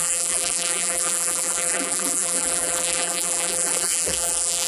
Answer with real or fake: fake